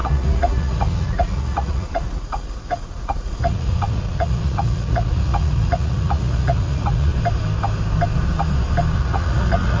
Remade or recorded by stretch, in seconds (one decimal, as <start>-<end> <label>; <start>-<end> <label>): 0.0-7.1 remade; 7.1-9.0 recorded; 9.0-9.8 remade